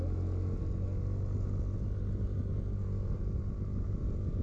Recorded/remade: recorded